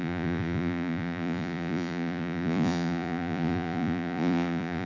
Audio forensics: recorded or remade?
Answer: remade